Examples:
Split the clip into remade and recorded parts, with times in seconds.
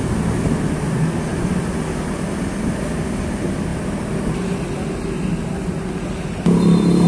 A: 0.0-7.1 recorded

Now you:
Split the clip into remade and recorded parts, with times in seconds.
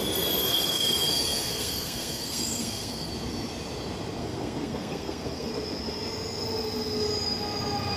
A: 0.0-0.4 recorded; 0.4-3.1 remade; 3.1-4.2 recorded; 4.2-5.5 remade; 5.5-8.0 recorded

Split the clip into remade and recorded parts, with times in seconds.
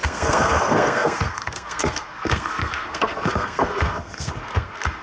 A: 0.0-5.0 remade